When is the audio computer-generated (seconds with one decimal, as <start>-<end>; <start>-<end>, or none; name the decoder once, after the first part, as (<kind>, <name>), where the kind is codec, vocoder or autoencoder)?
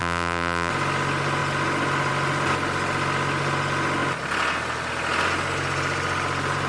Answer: 0.0-0.7 (vocoder, BigVGAN v2)